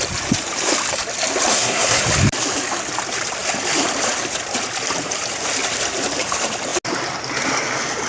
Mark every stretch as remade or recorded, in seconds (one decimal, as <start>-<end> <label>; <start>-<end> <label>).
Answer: 0.0-1.5 recorded; 1.5-2.0 remade; 2.0-8.1 recorded